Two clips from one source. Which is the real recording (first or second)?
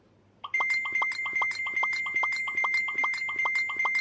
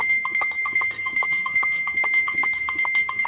first